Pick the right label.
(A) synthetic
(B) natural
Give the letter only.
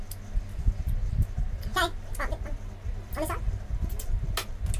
B